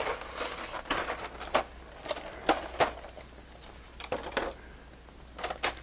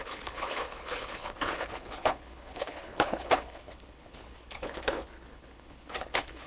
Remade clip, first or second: second